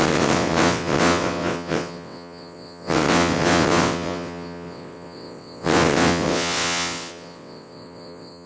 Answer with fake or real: fake